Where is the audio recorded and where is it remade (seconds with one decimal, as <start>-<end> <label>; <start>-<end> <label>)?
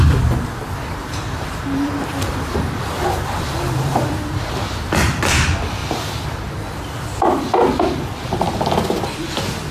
0.0-1.0 recorded; 1.0-4.1 remade; 4.1-9.7 recorded